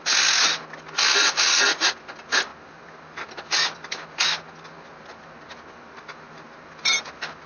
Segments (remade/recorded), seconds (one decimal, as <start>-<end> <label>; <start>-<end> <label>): 0.0-7.5 recorded